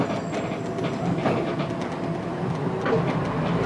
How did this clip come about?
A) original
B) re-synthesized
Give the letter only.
A